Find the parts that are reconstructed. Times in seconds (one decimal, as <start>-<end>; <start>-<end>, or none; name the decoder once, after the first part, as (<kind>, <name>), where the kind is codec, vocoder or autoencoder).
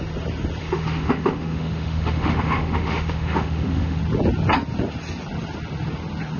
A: 0.6-4.0 (autoencoder, DAC-VAE)